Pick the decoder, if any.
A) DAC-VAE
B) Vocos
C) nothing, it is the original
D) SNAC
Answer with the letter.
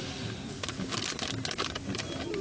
C